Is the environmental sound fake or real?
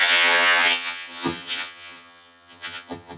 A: fake